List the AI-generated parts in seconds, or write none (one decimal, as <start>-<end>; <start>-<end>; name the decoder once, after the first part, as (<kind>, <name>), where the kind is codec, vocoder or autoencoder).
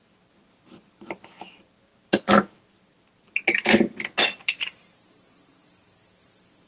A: none